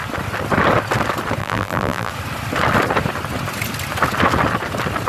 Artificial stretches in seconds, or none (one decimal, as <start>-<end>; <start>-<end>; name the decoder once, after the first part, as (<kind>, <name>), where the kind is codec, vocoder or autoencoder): 1.4-2.1 (vocoder, BigVGAN v2)